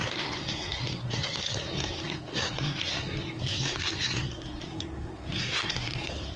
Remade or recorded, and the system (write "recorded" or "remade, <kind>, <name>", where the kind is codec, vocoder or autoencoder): remade, codec, SNAC